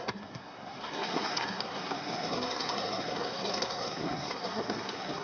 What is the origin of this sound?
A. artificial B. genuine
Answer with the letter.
A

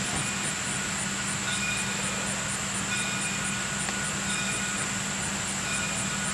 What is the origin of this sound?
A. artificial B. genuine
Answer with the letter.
B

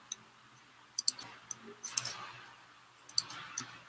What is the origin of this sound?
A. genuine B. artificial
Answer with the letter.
A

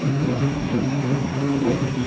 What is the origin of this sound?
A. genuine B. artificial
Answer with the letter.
B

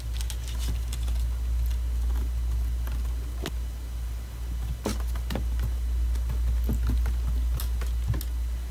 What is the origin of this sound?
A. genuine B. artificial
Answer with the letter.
A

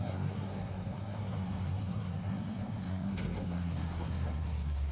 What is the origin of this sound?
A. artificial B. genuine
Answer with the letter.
A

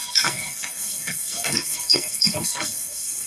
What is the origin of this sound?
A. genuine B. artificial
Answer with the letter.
B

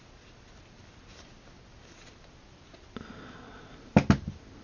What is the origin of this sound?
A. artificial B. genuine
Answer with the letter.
B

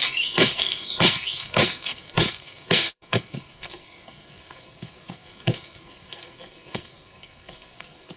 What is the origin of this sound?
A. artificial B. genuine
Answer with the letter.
A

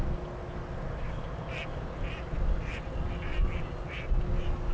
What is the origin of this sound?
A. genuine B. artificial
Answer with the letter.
A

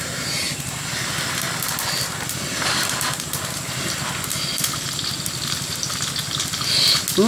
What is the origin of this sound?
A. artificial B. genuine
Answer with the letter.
B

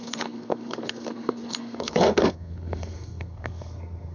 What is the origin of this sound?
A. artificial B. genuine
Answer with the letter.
A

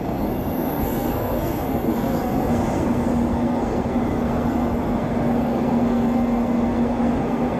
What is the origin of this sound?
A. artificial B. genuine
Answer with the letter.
A